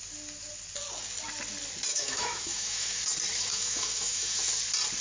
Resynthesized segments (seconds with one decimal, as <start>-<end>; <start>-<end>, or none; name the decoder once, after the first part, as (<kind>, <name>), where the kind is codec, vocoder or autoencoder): 1.9-3.0 (autoencoder, DAC-VAE); 3.5-4.5